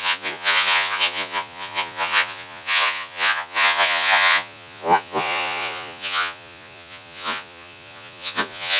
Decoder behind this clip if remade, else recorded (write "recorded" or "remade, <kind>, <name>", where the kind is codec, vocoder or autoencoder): remade, vocoder, Vocos